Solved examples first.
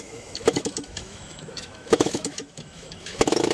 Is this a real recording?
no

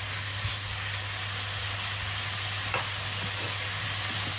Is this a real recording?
yes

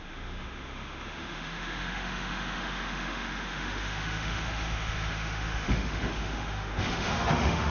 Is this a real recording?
no